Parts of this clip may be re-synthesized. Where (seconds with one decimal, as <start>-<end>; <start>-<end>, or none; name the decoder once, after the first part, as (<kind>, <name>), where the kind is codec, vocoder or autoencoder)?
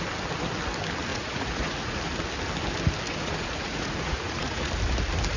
1.1-2.0 (vocoder, Vocos); 3.1-4.7